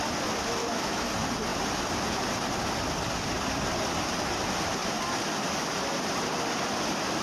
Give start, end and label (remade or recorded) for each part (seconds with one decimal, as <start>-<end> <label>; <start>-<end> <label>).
0.0-0.6 recorded; 0.6-1.1 remade; 1.1-7.2 recorded